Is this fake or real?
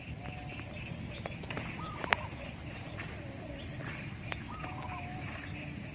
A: real